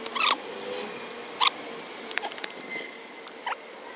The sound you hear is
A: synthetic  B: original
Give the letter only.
B